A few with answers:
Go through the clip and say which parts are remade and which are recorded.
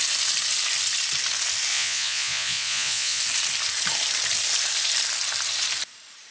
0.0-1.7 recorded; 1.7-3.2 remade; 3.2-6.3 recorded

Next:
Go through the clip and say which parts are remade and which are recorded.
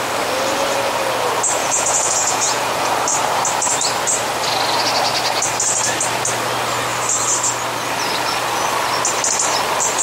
0.0-1.6 recorded; 1.6-2.9 remade; 2.9-10.0 recorded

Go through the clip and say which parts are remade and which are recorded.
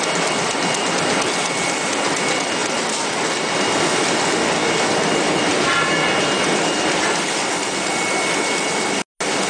0.0-9.5 recorded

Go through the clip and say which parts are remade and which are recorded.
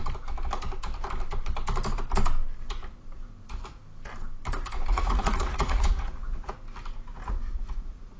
0.0-4.9 recorded; 4.9-6.5 remade; 6.5-7.1 recorded; 7.1-8.2 remade